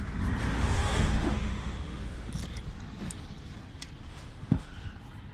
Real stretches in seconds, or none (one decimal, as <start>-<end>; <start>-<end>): 0.0-0.4; 2.3-4.1; 4.7-5.3